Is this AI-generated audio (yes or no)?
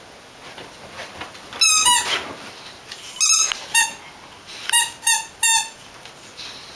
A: no